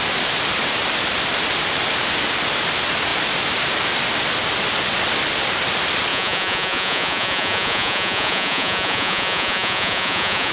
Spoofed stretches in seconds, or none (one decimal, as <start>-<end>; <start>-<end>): 6.1-10.5